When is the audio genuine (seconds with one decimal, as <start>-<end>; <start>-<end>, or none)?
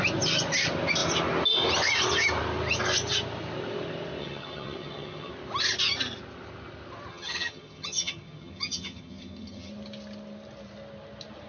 0.0-4.2; 5.3-7.1; 9.7-11.5